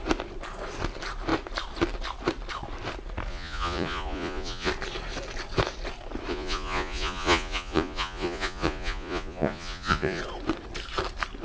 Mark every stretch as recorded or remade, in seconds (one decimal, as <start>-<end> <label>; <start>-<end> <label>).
0.0-3.3 recorded; 3.3-4.7 remade; 4.7-6.3 recorded; 6.3-10.2 remade; 10.2-11.4 recorded